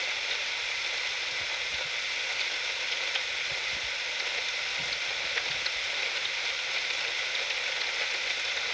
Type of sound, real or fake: real